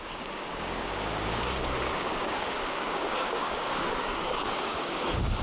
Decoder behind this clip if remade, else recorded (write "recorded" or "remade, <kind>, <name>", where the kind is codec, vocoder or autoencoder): remade, codec, DAC